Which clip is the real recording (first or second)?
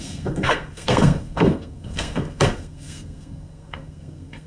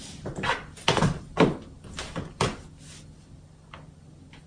second